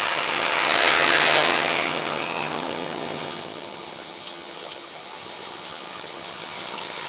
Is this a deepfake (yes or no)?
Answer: yes